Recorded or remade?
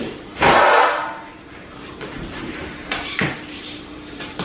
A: remade